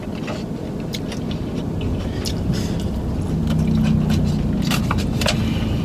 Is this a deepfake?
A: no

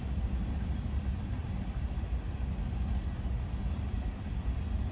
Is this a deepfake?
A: no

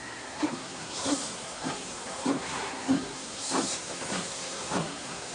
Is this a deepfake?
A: yes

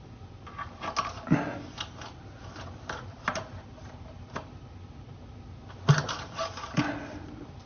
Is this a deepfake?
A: no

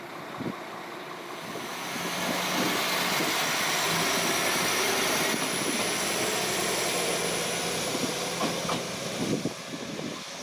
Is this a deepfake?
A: no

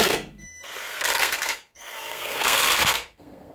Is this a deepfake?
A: yes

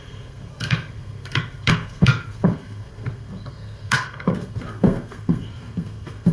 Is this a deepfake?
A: yes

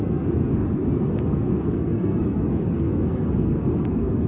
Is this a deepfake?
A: yes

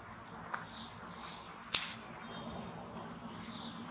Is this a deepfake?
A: no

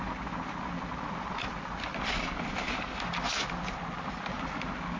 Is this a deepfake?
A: no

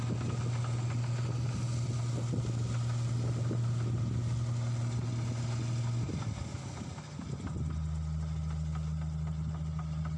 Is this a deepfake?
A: no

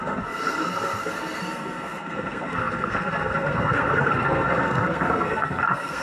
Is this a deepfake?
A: yes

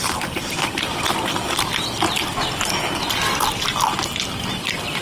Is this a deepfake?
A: no